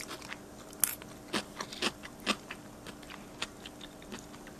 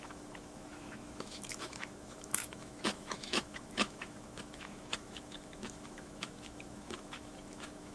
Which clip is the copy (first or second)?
second